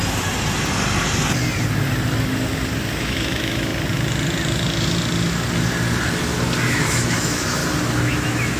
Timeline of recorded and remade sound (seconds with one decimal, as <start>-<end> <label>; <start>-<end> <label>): 0.0-3.0 recorded; 3.0-3.7 remade; 3.7-6.7 recorded; 6.7-7.6 remade; 7.6-8.1 recorded; 8.1-8.6 remade